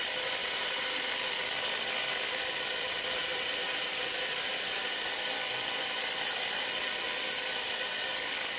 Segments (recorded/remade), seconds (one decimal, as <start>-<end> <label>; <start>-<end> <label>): 0.0-0.4 recorded; 0.4-1.0 remade; 1.0-3.2 recorded; 3.2-5.1 remade; 5.1-8.6 recorded